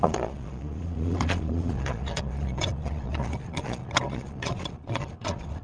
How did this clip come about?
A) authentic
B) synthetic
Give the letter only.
B